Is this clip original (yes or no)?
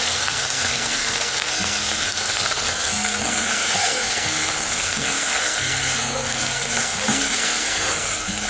no